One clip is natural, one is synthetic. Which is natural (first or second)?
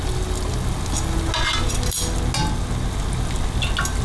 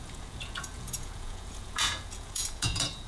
first